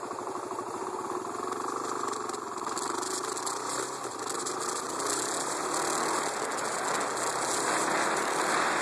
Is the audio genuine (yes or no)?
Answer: yes